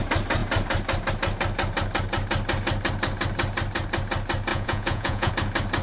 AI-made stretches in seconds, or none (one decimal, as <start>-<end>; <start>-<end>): 4.5-5.3